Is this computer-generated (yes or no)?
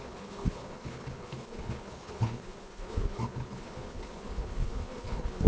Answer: yes